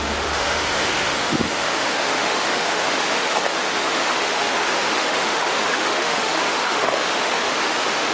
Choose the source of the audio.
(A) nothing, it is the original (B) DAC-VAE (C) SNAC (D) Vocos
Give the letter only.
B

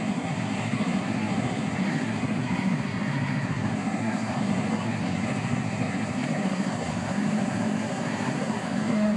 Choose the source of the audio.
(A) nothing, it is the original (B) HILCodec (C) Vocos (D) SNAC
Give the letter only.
D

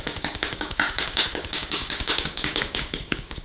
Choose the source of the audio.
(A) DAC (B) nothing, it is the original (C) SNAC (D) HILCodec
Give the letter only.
A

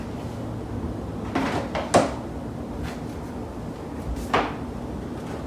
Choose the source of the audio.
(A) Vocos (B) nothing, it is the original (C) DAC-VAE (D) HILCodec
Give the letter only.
B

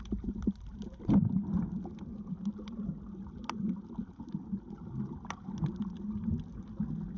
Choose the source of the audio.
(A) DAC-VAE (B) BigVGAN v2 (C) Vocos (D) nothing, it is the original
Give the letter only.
D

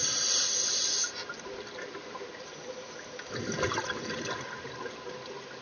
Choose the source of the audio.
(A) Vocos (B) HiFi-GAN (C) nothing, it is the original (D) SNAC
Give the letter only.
C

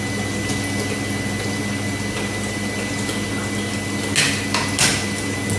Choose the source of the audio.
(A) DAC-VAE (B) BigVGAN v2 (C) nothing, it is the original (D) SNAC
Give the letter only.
C